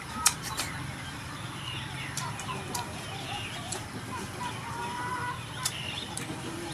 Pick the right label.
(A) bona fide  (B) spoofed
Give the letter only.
A